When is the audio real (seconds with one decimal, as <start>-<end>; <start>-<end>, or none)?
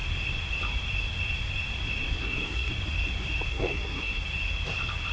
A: 0.0-2.2; 2.7-3.5; 4.2-5.1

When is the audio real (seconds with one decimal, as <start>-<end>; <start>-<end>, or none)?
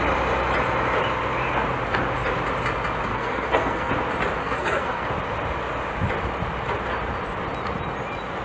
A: 0.0-3.1; 3.9-4.4; 5.1-8.4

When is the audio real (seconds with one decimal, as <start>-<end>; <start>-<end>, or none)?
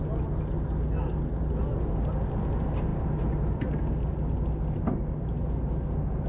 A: 0.0-6.3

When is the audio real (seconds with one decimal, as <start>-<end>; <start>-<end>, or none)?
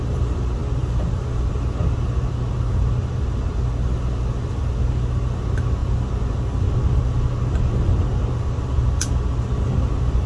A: 0.0-10.3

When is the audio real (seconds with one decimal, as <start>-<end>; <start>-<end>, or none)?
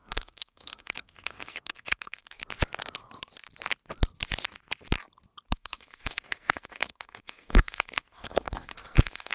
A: 2.4-5.5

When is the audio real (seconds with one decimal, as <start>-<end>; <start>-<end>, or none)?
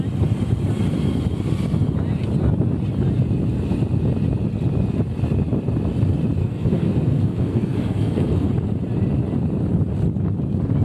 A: 0.0-6.4; 8.5-10.8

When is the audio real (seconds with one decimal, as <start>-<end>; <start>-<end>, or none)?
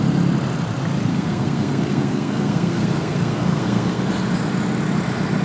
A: 0.0-1.1; 4.1-5.4